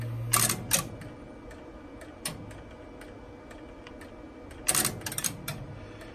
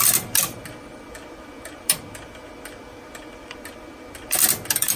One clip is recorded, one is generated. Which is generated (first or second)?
second